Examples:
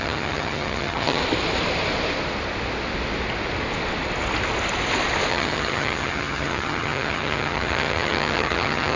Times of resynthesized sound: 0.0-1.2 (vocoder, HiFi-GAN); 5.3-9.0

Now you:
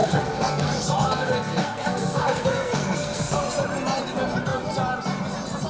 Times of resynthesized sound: 0.0-3.4 (codec, SNAC)

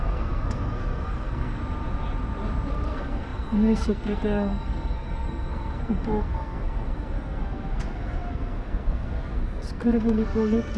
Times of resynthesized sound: 0.0-1.6 (codec, SNAC); 2.7-10.8

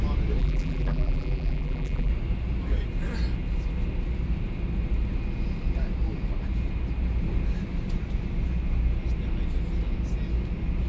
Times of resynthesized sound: 0.4-2.1 (vocoder, BigVGAN v2)

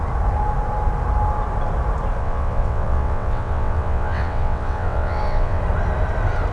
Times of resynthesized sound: 2.2-5.6 (vocoder, WaveNeXt)

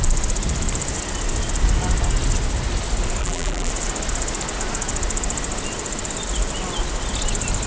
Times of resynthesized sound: 3.2-3.7 (vocoder, BigVGAN v2)

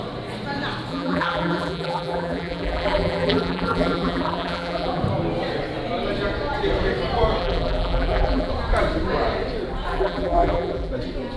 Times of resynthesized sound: 0.9-5.0 (vocoder, BigVGAN v2); 7.4-8.5; 9.9-10.9

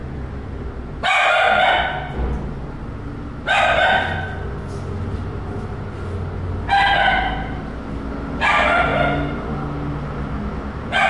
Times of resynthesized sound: none